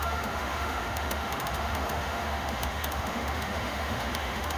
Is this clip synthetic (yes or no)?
yes